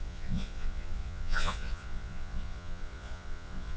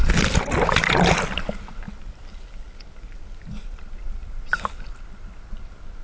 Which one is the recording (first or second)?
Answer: second